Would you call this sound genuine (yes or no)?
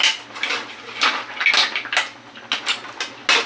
yes